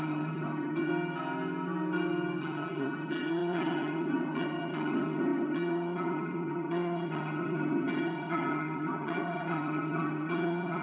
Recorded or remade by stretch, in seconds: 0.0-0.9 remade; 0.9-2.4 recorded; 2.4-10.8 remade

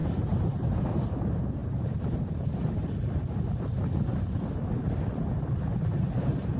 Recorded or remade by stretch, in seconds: 0.0-0.7 remade; 0.7-1.6 recorded; 1.6-2.9 remade; 2.9-5.7 recorded; 5.7-6.6 remade

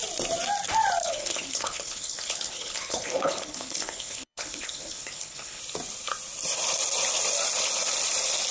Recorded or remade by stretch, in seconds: 0.0-1.0 recorded; 1.0-5.6 remade; 5.6-8.5 recorded